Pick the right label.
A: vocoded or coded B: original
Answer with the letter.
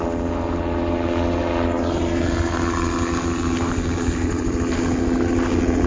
B